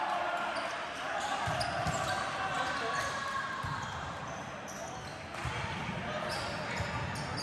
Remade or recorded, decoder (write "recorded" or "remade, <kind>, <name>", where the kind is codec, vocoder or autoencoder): recorded